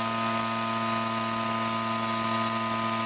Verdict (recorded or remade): recorded